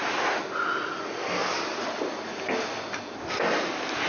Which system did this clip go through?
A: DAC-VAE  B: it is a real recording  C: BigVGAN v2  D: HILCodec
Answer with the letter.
B